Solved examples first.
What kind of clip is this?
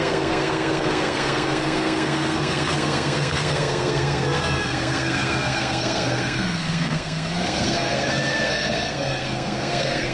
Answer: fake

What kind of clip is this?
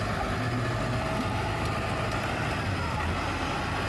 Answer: real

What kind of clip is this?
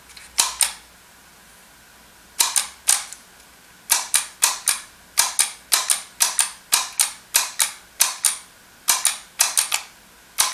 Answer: real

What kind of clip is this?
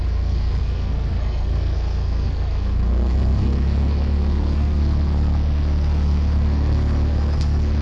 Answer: fake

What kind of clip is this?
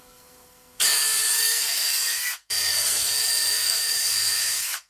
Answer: fake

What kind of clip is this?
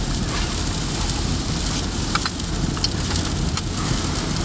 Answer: real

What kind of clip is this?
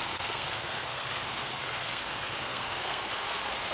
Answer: fake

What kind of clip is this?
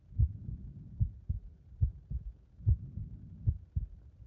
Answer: real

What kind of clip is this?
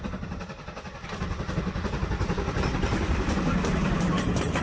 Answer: real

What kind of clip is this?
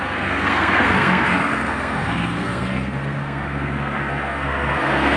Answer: fake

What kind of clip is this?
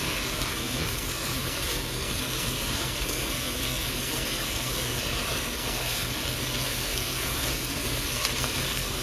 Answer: fake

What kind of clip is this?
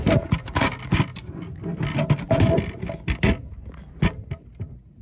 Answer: real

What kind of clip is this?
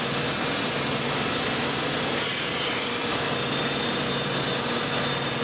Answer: real